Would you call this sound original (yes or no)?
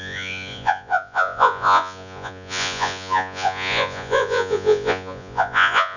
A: no